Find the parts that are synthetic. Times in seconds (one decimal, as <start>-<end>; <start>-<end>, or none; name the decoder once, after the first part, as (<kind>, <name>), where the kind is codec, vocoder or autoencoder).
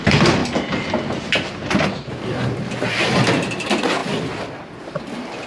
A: none